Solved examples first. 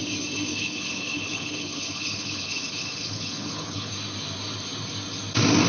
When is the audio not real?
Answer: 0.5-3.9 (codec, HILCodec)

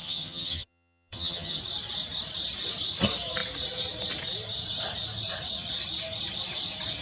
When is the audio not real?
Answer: 0.0-1.6 (vocoder, HiFi-GAN)

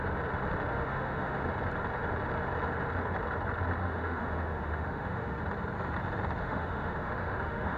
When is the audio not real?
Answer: 0.7-1.4 (autoencoder, DAC-VAE); 3.8-5.4; 6.4-7.8

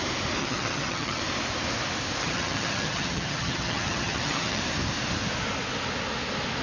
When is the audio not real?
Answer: 0.4-1.2 (vocoder, HiFi-GAN); 2.2-4.6

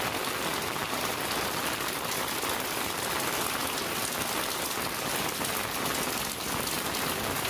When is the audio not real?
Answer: none